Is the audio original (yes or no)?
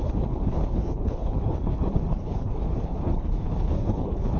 no